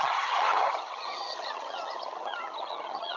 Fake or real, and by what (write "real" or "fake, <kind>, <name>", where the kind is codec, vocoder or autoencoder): fake, vocoder, HiFi-GAN